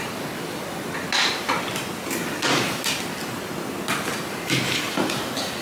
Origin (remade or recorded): recorded